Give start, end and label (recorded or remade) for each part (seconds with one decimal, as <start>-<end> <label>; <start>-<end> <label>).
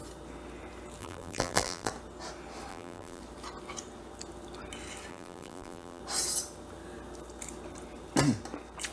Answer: 0.0-1.0 recorded; 1.0-1.9 remade; 1.9-2.7 recorded; 2.7-3.2 remade; 3.2-5.1 recorded; 5.1-6.0 remade; 6.0-8.9 recorded